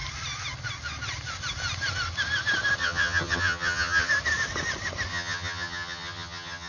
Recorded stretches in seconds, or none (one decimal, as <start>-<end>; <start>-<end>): 0.0-2.8; 4.1-5.1